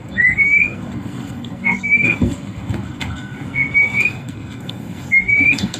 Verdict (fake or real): fake